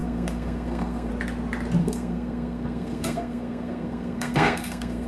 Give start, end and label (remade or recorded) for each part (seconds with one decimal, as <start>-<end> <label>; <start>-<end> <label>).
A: 0.0-1.1 remade; 1.1-1.8 recorded; 1.8-5.1 remade